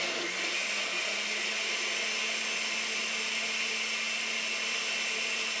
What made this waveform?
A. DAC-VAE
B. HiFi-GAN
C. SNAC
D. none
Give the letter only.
D